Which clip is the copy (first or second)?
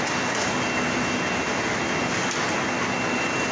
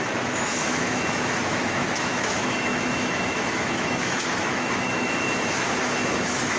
second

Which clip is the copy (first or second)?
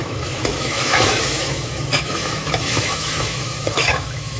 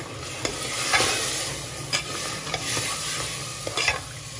first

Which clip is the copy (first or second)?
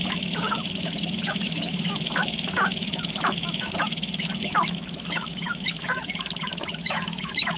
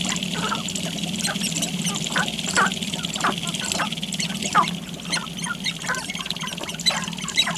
first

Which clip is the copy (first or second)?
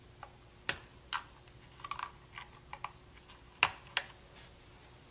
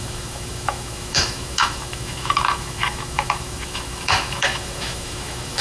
second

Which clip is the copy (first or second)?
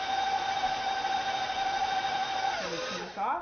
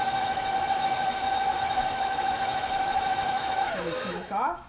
second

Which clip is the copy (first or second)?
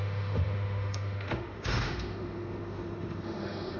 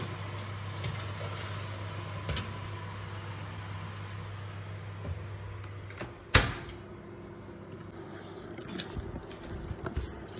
first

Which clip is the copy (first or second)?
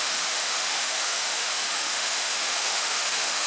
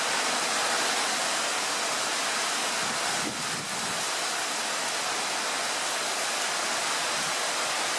first